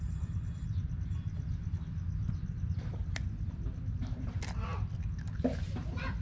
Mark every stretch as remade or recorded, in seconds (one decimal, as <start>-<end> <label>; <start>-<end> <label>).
0.0-6.2 recorded